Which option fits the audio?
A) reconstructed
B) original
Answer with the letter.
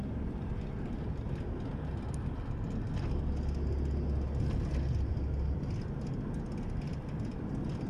B